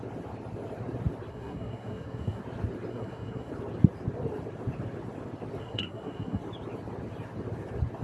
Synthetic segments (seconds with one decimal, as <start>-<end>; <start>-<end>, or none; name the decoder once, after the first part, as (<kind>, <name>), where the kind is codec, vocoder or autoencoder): 1.3-2.4 (codec, SNAC); 2.9-3.5; 5.6-6.4